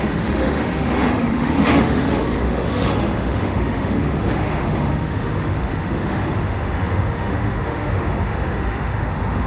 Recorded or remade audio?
remade